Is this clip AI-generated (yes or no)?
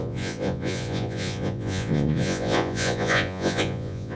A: yes